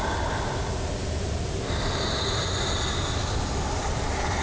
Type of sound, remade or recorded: recorded